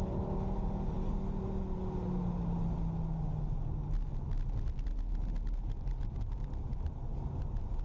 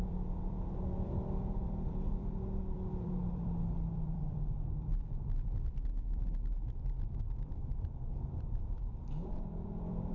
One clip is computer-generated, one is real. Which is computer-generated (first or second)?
second